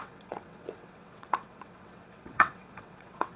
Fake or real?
fake